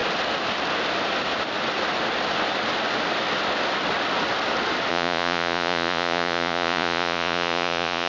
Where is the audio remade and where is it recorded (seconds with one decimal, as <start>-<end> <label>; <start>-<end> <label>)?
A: 0.0-4.9 recorded; 4.9-8.1 remade